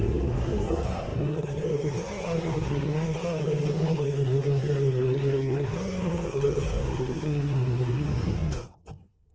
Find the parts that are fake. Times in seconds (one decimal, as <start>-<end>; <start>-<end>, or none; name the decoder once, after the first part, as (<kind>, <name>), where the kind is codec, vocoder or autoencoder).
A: 0.0-9.3 (codec, SNAC)